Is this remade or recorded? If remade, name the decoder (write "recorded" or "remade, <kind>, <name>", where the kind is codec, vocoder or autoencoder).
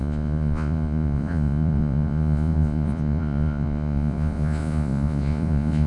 remade, vocoder, Vocos